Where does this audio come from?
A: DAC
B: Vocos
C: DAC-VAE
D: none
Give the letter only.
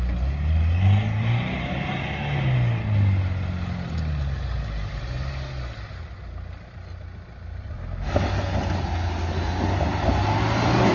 D